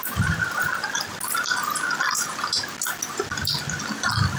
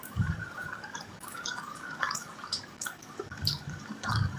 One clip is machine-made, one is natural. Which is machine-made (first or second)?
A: second